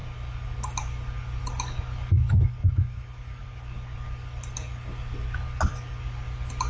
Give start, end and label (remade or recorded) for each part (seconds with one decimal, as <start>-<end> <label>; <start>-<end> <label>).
0.0-6.7 recorded